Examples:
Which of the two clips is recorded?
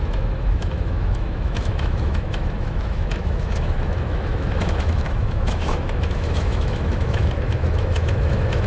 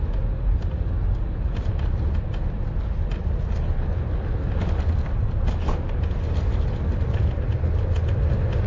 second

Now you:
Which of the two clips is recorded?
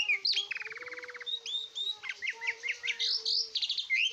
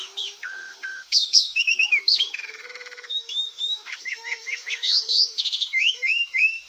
first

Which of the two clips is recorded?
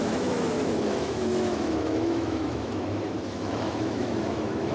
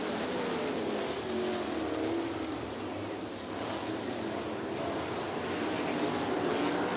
second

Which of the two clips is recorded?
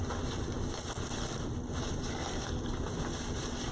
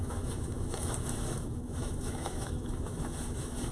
first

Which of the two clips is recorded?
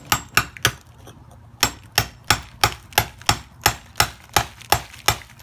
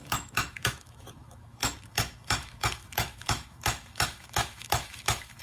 first